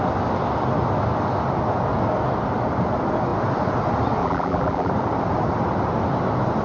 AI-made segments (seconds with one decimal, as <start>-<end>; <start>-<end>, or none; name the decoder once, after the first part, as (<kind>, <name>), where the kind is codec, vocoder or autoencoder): 4.2-4.9 (vocoder, BigVGAN v2)